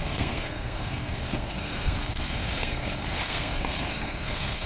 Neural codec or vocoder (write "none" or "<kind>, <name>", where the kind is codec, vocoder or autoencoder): codec, SNAC